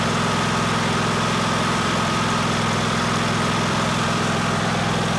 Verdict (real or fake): fake